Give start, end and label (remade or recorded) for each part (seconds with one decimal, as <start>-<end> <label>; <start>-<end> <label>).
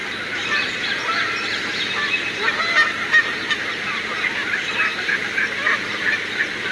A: 0.0-1.1 remade; 1.1-3.2 recorded; 3.2-5.1 remade; 5.1-6.7 recorded